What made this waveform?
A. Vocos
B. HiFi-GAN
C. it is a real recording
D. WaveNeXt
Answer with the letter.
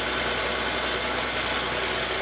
C